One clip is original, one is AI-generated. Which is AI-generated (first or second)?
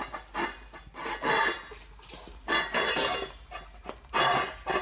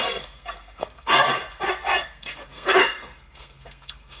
second